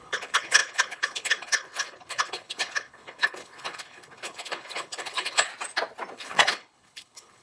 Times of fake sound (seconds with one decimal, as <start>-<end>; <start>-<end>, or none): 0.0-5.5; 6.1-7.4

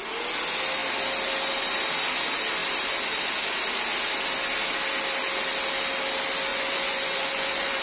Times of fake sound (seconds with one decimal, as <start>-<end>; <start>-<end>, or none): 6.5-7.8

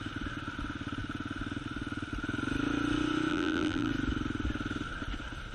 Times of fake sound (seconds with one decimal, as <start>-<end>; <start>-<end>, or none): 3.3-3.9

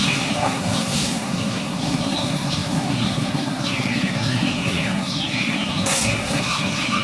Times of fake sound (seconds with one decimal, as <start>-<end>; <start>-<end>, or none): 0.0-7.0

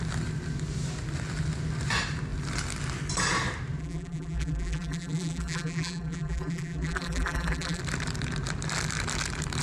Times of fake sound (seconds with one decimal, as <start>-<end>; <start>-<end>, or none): 3.8-7.8

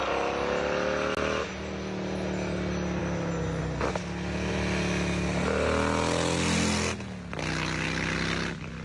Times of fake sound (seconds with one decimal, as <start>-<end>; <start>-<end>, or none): none

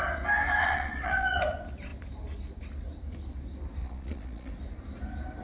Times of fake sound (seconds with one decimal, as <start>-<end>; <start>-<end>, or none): 0.6-1.4; 3.8-4.5